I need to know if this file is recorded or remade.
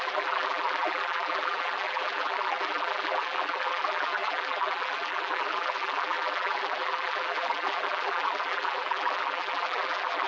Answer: remade